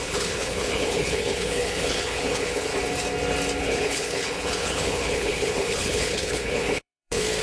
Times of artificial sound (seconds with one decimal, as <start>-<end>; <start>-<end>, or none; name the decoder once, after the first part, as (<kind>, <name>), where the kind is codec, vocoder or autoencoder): 0.0-2.7 (codec, HILCodec); 3.6-7.4

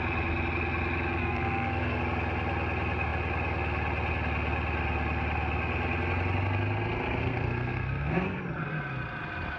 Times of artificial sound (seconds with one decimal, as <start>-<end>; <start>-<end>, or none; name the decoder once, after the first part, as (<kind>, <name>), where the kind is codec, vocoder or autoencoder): 1.2-2.0 (codec, SNAC); 7.2-8.4